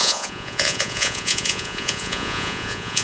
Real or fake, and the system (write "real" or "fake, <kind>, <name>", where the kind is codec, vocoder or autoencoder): fake, vocoder, Vocos